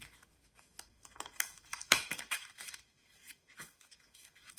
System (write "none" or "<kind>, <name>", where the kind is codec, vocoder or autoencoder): autoencoder, DAC-VAE